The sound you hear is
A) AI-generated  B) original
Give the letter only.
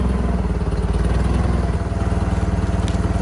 B